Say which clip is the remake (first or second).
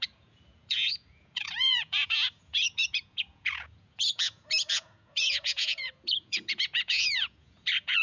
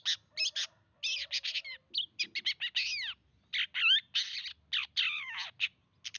first